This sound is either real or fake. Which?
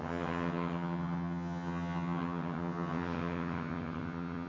fake